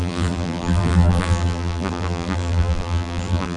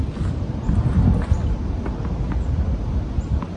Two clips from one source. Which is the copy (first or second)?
first